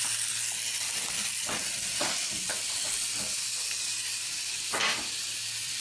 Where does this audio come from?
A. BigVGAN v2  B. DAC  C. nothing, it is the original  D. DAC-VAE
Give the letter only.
C